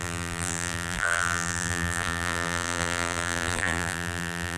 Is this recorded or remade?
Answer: remade